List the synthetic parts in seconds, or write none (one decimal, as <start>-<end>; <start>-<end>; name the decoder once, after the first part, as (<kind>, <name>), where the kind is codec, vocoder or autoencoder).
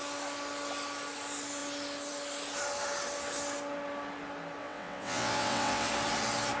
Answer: 4.6-5.9 (vocoder, WaveNeXt)